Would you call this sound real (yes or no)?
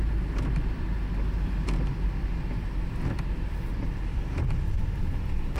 yes